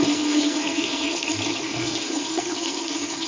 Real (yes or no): no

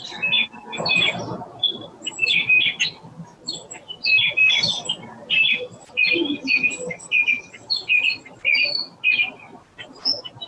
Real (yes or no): yes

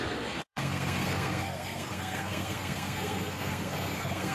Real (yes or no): no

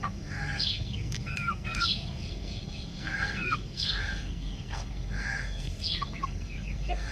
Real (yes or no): no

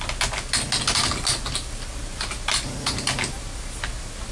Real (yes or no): yes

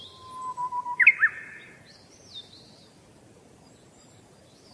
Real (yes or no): yes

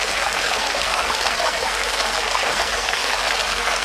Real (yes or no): no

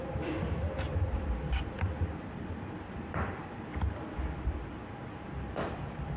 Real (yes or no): yes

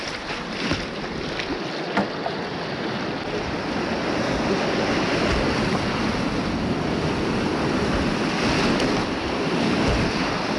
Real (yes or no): yes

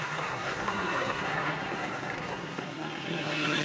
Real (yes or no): no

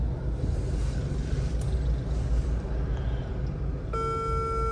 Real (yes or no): yes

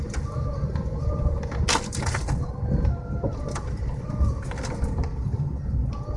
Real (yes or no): yes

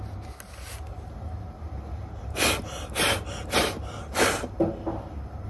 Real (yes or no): yes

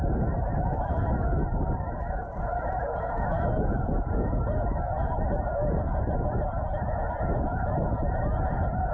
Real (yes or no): yes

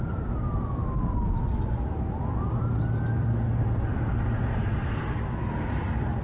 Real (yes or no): yes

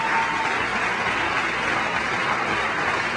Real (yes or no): yes